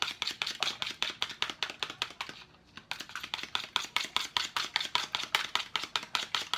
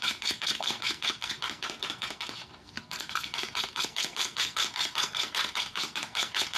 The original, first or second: first